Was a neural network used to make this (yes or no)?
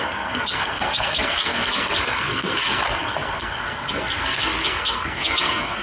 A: yes